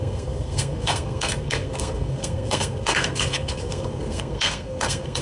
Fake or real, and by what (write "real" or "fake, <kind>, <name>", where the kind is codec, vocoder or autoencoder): fake, codec, SNAC